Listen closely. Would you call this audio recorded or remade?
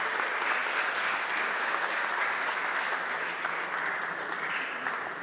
recorded